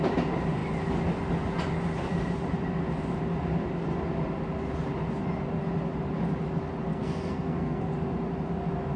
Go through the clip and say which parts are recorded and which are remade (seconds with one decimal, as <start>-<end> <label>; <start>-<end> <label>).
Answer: 0.0-6.9 recorded; 6.9-7.8 remade; 7.8-9.0 recorded